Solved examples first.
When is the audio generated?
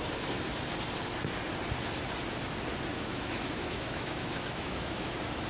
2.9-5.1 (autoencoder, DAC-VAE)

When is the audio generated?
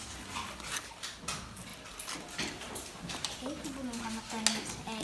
none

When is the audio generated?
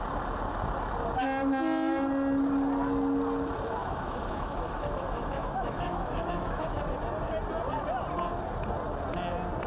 3.8-6.8 (autoencoder, DAC-VAE)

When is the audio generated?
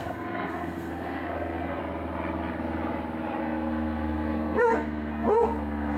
0.0-1.8 (codec, SNAC); 3.4-6.0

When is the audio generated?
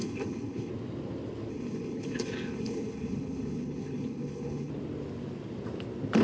0.0-0.7 (codec, HILCodec); 1.5-4.7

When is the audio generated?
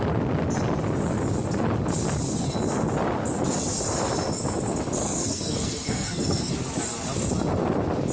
5.0-6.5 (codec, SNAC)